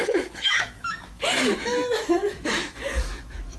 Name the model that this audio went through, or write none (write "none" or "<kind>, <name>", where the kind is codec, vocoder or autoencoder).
autoencoder, DAC-VAE